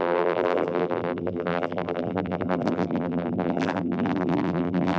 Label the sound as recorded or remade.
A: remade